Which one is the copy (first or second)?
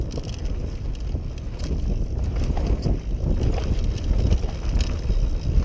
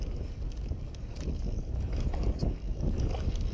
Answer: second